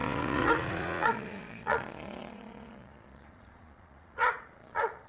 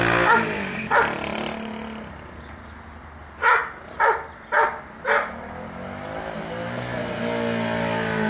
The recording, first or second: second